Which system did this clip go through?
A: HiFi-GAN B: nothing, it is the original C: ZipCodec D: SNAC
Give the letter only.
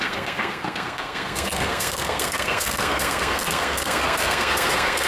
D